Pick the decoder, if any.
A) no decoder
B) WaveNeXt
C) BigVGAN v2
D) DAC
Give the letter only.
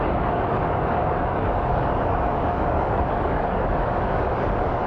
D